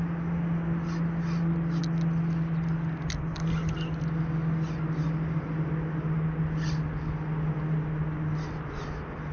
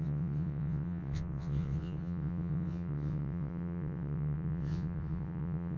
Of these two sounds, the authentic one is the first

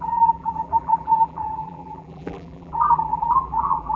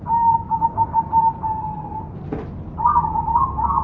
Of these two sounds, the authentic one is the second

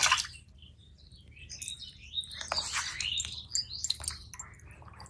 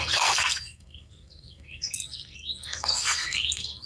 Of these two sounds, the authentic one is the first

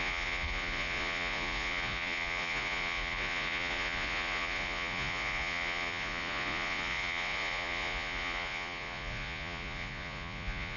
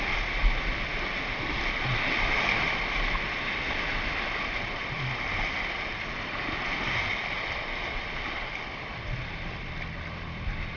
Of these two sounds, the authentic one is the second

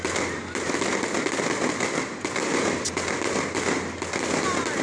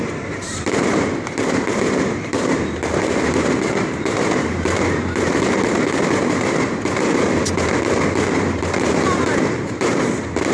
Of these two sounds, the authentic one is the first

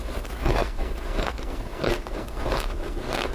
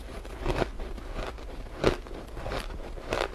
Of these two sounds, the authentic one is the second